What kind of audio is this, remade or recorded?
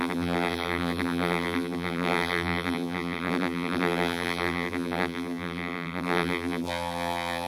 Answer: remade